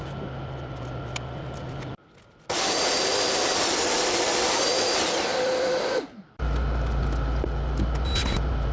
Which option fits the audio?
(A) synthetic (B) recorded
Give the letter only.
B